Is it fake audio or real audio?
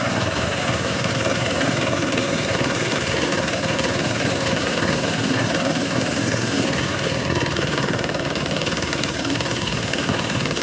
fake